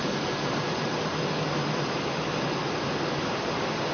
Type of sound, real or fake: real